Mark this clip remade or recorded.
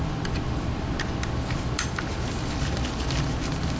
remade